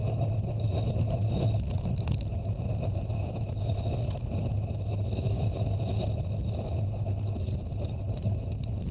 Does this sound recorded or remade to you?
recorded